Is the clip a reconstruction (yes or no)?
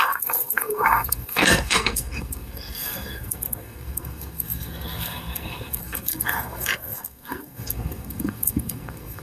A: yes